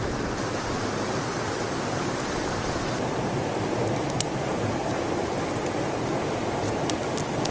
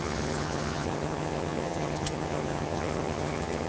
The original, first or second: first